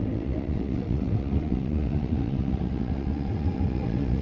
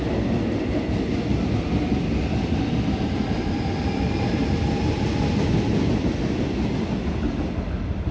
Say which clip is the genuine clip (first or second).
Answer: second